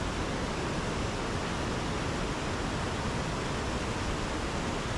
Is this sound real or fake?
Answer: real